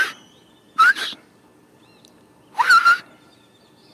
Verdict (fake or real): real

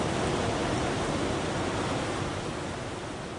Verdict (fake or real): real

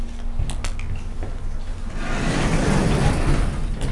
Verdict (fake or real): real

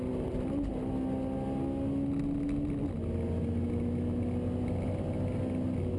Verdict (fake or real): real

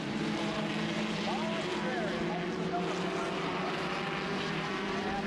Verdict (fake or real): real